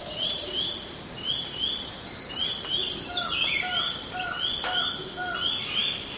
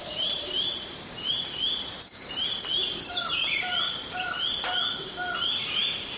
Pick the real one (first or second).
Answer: first